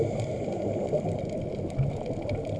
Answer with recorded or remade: recorded